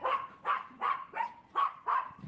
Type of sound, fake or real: real